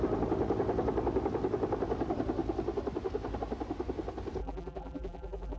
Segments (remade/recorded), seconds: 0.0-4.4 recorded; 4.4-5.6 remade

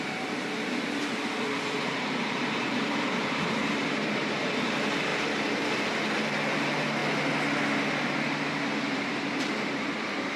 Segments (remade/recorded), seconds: 0.0-7.0 remade; 7.0-8.8 recorded; 8.8-10.4 remade

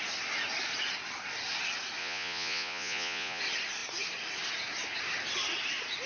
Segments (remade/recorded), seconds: 0.0-2.0 recorded; 2.0-3.4 remade; 3.4-6.1 recorded

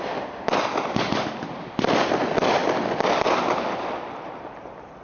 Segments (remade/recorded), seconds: 0.0-5.0 recorded

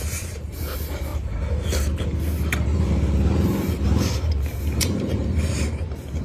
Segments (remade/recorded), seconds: 0.0-1.1 remade; 1.1-4.8 recorded; 4.8-6.2 remade

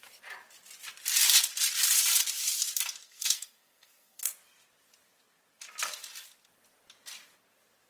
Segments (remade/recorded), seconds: 0.0-3.0 recorded; 3.0-4.3 remade; 4.3-7.9 recorded